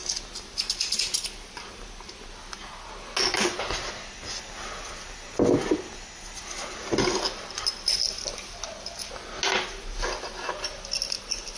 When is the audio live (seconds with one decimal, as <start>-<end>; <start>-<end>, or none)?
0.0-11.6